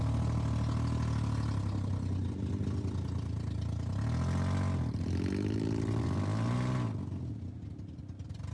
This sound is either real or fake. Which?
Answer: real